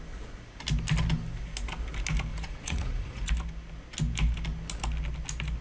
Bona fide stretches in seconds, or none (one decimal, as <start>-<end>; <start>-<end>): 0.0-2.3; 3.3-5.6